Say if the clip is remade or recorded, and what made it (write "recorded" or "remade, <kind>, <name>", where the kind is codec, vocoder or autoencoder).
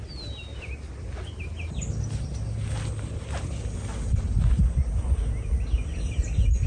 recorded